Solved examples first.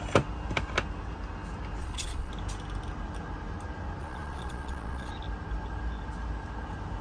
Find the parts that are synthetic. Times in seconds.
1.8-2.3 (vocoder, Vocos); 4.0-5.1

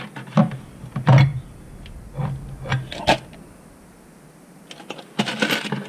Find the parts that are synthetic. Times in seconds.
none

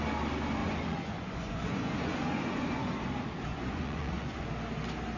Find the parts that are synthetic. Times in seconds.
0.6-3.0 (vocoder, Vocos); 3.5-4.5

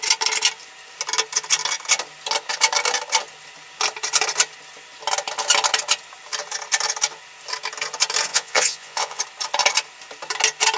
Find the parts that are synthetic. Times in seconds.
8.3-9.2 (vocoder, Vocos)

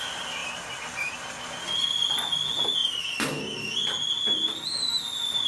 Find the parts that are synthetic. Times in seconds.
none

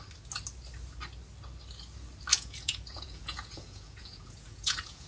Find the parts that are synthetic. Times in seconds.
2.3-5.1 (vocoder, Vocos)